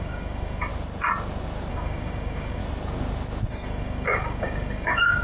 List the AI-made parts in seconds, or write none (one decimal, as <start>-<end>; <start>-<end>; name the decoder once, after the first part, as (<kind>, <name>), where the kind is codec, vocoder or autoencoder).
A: 0.0-0.7 (codec, DAC); 1.7-2.6; 3.5-5.2